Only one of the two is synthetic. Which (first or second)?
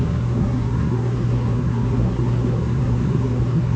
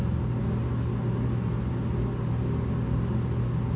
first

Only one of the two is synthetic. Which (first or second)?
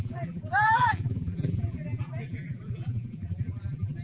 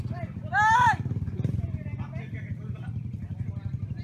first